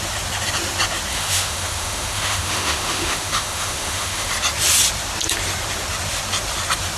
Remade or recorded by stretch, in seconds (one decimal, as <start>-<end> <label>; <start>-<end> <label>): 0.0-1.1 recorded; 1.1-4.3 remade; 4.3-7.0 recorded

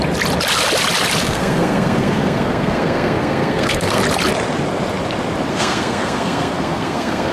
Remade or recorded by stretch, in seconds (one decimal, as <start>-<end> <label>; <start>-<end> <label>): 0.0-1.2 recorded; 1.2-4.0 remade; 4.0-5.5 recorded; 5.5-7.3 remade

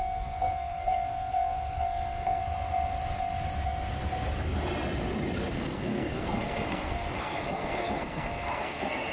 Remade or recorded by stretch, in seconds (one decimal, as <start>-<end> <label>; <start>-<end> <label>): 0.0-2.4 remade; 2.4-5.5 recorded; 5.5-9.1 remade

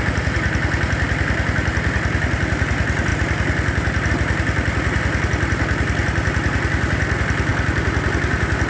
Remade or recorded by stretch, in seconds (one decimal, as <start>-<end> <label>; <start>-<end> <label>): 0.0-8.7 recorded

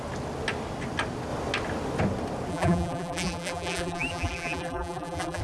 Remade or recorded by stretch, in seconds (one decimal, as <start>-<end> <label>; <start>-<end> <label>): 0.0-2.5 recorded; 2.5-5.4 remade

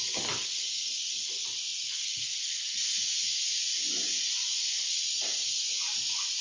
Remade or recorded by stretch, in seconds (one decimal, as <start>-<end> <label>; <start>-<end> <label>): 0.0-6.4 recorded

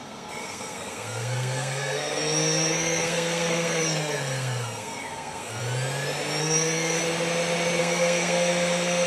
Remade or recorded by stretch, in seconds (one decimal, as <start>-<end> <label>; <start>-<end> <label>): 0.0-5.6 remade; 5.6-6.4 recorded; 6.4-7.0 remade; 7.0-7.8 recorded; 7.8-9.1 remade